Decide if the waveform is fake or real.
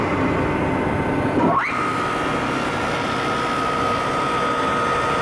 real